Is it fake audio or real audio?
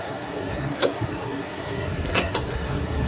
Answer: fake